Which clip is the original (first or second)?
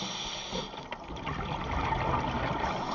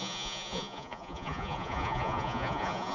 first